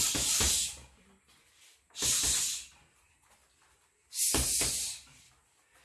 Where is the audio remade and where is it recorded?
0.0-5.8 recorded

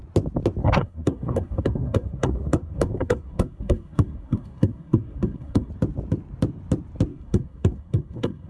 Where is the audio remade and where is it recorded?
0.0-0.6 recorded; 0.6-5.7 remade; 5.7-7.1 recorded; 7.1-8.5 remade

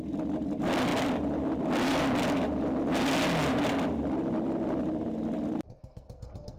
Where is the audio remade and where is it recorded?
0.0-5.8 recorded; 5.8-6.6 remade

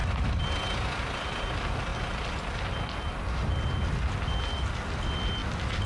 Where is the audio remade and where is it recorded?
0.0-5.9 recorded

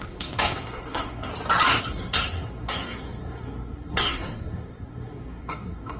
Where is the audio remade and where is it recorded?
0.0-1.3 remade; 1.3-1.8 recorded; 1.8-6.0 remade

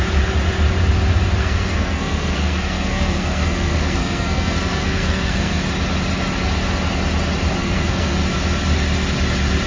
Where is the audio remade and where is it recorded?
0.0-1.4 recorded; 1.4-5.6 remade; 5.6-7.6 recorded; 7.6-8.2 remade; 8.2-9.7 recorded